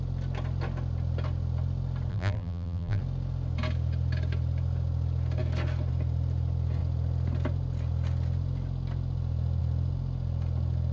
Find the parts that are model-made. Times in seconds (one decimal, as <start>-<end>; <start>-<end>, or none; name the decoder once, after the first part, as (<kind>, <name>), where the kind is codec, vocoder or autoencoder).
2.1-3.0 (vocoder, BigVGAN v2)

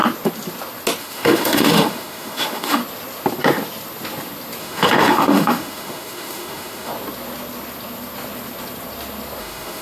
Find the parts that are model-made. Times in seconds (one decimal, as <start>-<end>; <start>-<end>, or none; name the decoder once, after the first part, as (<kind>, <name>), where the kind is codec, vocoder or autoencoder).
1.0-2.8 (autoencoder, DAC-VAE); 4.6-6.9; 9.4-9.8

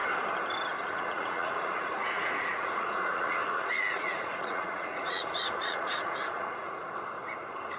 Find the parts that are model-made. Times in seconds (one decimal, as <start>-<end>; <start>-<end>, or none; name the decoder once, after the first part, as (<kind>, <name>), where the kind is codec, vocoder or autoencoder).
0.9-6.8 (vocoder, Vocos)

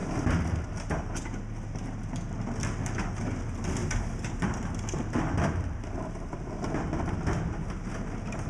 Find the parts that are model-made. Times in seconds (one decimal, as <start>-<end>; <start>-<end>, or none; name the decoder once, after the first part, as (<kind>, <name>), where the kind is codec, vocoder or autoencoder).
3.8-7.2 (vocoder, BigVGAN v2)

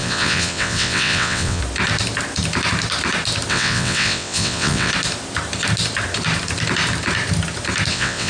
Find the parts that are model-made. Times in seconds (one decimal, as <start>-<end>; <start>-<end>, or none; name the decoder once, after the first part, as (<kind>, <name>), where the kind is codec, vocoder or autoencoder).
0.0-1.6 (vocoder, WaveNeXt); 3.5-4.9; 7.9-8.3

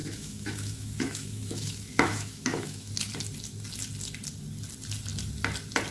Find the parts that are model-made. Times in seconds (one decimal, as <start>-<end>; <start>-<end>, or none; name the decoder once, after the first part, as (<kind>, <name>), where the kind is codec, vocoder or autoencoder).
0.0-2.9 (autoencoder, DAC-VAE)

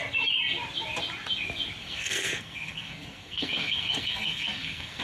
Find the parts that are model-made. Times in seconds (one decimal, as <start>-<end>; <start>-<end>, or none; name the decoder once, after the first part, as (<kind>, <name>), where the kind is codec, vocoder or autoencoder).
1.8-5.0 (codec, SNAC)

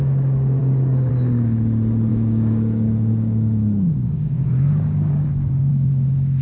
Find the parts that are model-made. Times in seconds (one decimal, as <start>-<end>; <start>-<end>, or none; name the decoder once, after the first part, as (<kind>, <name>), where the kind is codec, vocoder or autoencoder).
0.6-1.1 (codec, DAC); 2.1-5.9